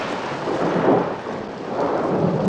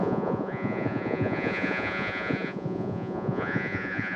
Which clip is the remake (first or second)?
second